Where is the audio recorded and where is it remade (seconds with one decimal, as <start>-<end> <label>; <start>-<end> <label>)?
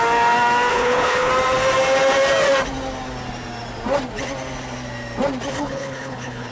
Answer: 0.0-0.7 recorded; 0.7-1.3 remade; 1.3-5.5 recorded; 5.5-6.5 remade